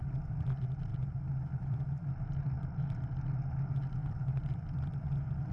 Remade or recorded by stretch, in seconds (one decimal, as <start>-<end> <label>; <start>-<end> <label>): 0.0-0.9 recorded; 0.9-2.1 remade; 2.1-4.0 recorded; 4.0-5.0 remade; 5.0-5.5 recorded